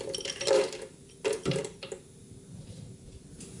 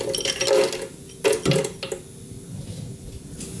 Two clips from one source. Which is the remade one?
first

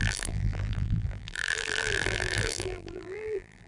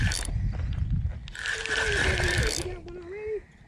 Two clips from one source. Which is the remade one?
first